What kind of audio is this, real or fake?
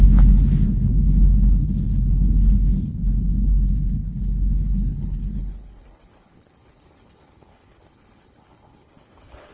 fake